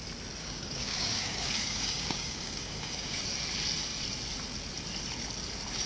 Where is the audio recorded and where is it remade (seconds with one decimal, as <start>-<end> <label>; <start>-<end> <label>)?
0.0-0.4 recorded; 0.4-3.2 remade; 3.2-5.9 recorded